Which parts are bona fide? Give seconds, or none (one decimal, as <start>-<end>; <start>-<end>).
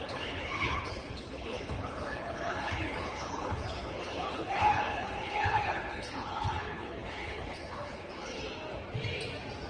8.4-9.7